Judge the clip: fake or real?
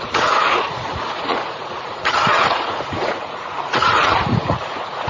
fake